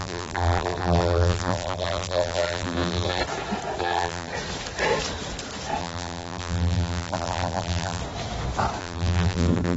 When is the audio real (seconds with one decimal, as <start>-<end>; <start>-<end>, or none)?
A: 3.2-3.8; 4.3-5.8; 8.0-8.8